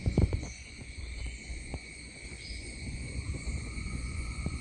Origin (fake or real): fake